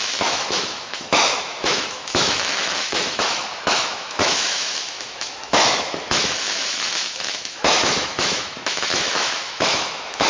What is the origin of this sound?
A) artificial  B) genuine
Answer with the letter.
A